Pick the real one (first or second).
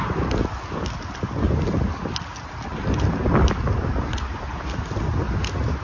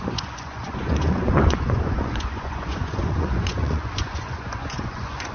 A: first